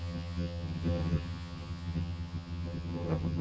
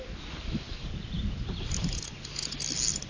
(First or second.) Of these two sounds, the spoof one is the first